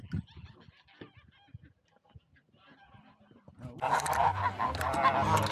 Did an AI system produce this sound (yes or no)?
no